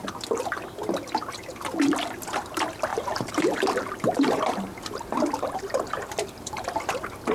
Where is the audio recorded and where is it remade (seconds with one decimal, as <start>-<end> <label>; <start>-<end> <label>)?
0.0-2.9 recorded; 2.9-6.8 remade; 6.8-7.3 recorded